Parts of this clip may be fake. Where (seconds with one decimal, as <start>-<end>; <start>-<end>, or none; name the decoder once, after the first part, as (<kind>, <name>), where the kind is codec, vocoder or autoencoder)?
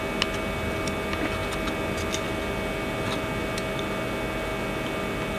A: none